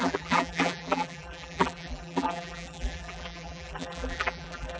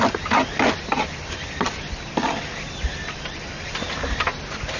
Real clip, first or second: second